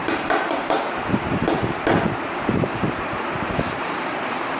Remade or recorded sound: remade